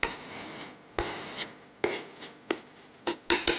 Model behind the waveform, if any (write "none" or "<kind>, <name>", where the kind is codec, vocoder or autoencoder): none